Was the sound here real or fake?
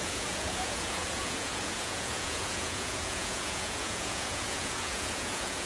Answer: fake